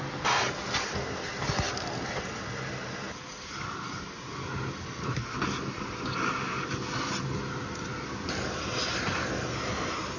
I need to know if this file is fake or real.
real